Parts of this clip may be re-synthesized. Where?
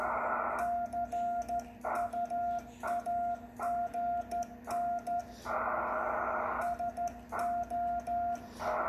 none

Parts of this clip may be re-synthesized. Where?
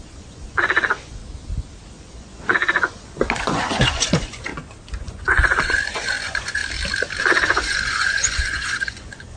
0.0-1.2; 1.9-4.5; 5.0-6.6; 7.2-9.4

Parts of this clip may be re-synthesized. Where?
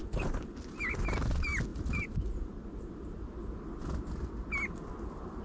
none